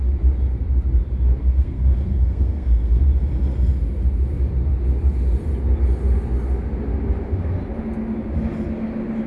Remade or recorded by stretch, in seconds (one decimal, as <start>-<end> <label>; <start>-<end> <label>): 0.0-1.4 recorded; 1.4-3.0 remade; 3.0-9.3 recorded